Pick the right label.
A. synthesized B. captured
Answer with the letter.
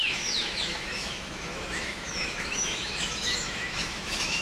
A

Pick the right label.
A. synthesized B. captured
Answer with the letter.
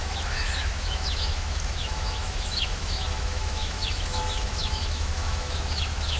A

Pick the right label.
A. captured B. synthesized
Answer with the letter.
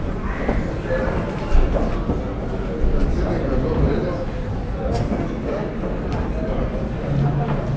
A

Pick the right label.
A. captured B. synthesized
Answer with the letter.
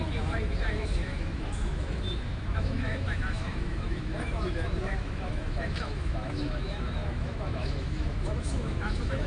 B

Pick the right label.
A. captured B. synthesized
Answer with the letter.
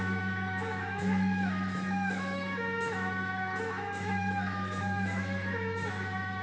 B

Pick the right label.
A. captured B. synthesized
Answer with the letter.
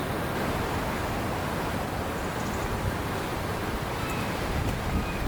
A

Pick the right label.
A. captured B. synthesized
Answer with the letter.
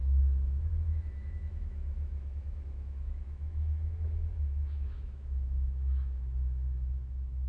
B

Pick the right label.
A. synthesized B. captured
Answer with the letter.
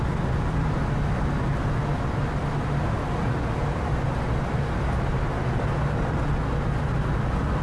B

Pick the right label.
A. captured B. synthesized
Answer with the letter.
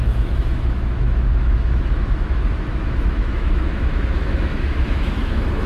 B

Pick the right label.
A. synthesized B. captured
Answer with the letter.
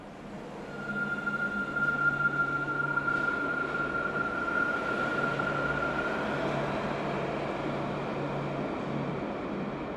B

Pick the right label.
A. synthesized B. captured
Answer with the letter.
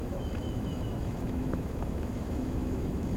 A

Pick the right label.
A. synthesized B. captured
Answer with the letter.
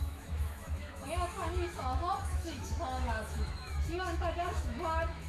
A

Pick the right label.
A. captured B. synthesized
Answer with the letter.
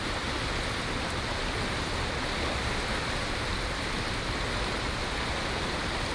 A